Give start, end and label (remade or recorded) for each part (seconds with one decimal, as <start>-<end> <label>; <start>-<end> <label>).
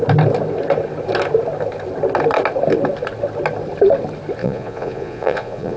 0.0-4.4 recorded; 4.4-5.8 remade